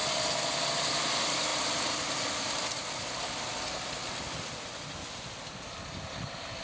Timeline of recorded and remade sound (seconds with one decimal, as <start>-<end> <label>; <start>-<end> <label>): 0.0-6.6 recorded